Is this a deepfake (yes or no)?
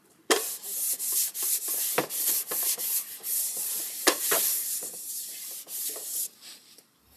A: yes